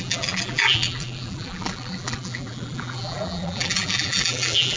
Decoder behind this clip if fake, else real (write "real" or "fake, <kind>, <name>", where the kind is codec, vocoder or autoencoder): fake, vocoder, BigVGAN v2